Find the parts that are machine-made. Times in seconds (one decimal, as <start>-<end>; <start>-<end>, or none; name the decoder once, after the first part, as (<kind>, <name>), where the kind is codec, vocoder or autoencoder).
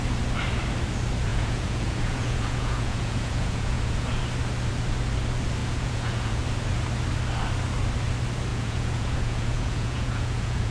1.3-4.2 (vocoder, Vocos); 5.6-6.4; 8.5-10.7